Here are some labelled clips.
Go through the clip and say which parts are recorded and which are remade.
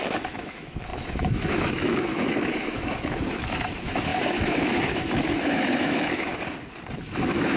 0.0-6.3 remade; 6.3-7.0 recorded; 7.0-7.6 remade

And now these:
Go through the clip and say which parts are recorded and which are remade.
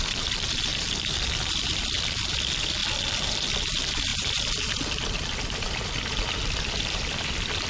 0.0-2.8 remade; 2.8-3.6 recorded; 3.6-7.7 remade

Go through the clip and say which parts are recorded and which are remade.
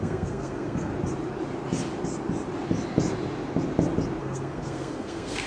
0.0-0.9 remade; 0.9-4.2 recorded; 4.2-5.5 remade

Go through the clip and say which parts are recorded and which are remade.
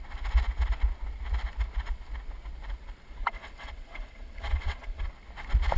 0.0-3.2 recorded; 3.2-5.1 remade; 5.1-5.8 recorded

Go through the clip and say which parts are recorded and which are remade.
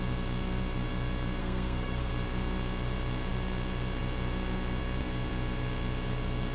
0.0-1.4 recorded; 1.4-2.1 remade; 2.1-6.5 recorded